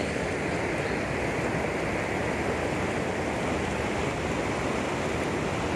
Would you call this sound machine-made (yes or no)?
no